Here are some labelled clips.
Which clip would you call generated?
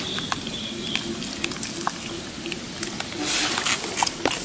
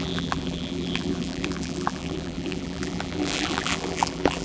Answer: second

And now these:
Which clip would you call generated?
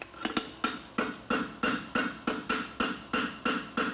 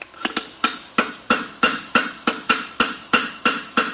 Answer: second